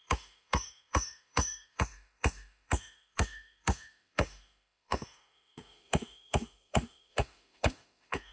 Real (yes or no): no